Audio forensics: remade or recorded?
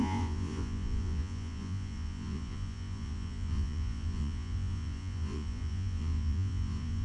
remade